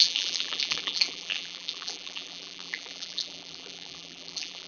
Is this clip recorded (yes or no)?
no